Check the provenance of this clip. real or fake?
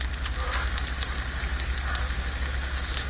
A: real